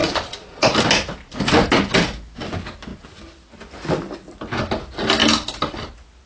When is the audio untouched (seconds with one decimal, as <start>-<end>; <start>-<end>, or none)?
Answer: 0.6-6.3